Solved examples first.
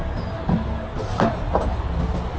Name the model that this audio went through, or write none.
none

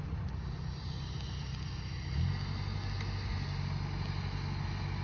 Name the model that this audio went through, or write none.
none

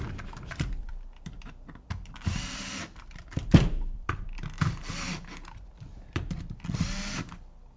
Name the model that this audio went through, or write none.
vocoder, BigVGAN v2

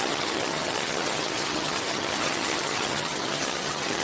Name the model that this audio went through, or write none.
vocoder, HiFi-GAN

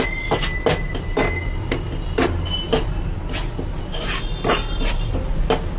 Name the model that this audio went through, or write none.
none